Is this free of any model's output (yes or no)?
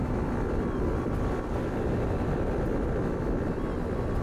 yes